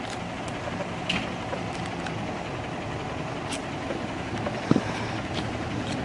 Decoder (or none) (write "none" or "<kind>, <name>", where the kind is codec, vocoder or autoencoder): none